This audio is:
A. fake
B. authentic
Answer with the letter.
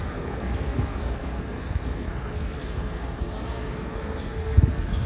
A